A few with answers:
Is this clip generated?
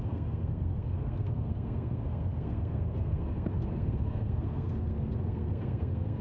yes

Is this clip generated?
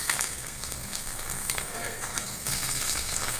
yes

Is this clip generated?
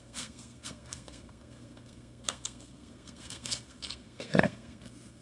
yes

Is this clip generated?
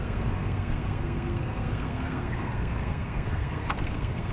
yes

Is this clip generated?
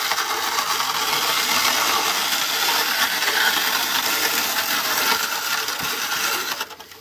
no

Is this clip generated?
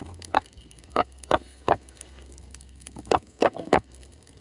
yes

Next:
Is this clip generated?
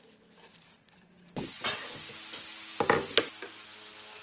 no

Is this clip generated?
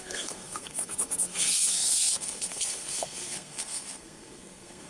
yes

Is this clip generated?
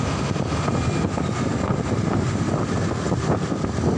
no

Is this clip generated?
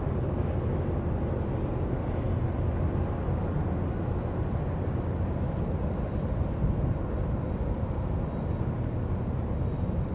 no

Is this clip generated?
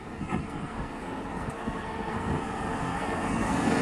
yes